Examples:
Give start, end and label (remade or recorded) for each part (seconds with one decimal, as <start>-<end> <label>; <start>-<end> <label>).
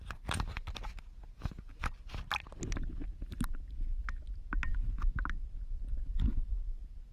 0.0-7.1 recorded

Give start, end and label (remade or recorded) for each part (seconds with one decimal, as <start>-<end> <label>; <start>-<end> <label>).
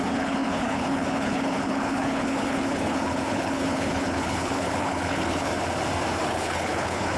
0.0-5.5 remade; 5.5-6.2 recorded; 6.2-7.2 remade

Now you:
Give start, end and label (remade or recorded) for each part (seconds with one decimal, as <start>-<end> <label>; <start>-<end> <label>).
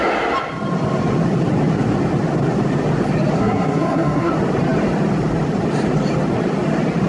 0.0-3.4 recorded; 3.4-4.3 remade; 4.3-7.1 recorded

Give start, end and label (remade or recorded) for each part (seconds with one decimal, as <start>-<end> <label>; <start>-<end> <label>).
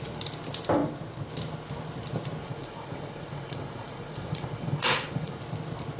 0.0-2.4 recorded; 2.4-5.4 remade; 5.4-6.0 recorded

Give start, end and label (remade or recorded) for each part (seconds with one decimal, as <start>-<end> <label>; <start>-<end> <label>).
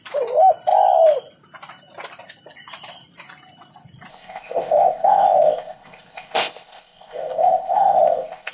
0.0-4.1 recorded; 4.1-8.5 remade